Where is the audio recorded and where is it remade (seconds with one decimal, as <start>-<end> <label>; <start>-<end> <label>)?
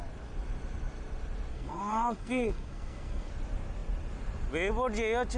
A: 0.0-1.5 recorded; 1.5-3.3 remade; 3.3-5.4 recorded